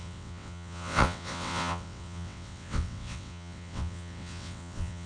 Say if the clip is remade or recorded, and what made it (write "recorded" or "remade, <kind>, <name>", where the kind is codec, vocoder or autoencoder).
remade, vocoder, WaveNeXt